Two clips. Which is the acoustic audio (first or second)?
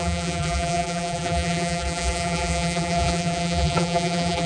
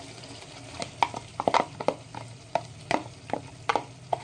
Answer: second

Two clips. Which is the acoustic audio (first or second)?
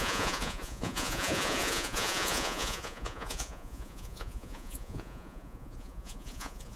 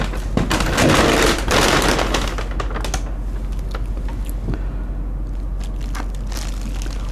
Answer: second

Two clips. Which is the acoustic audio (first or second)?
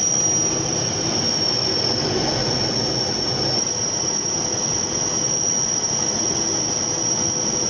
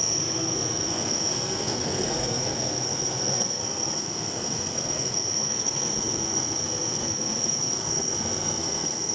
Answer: first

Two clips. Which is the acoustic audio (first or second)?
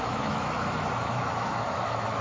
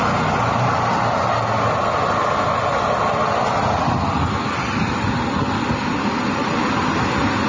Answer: second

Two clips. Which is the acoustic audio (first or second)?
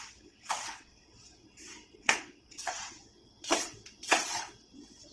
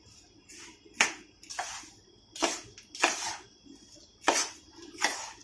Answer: second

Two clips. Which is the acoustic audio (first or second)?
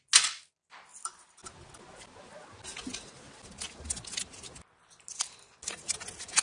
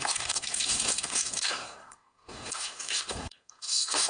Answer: first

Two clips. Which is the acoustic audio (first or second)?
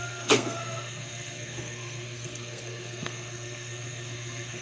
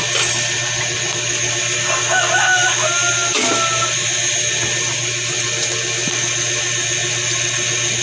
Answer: second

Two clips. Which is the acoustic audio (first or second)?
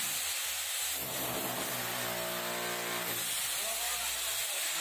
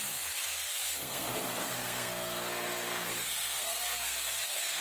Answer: first